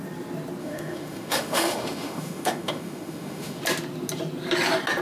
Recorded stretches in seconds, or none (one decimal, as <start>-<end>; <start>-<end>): 0.0-0.6; 3.6-5.0